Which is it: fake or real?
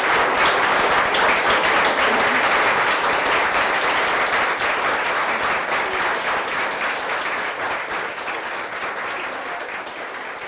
real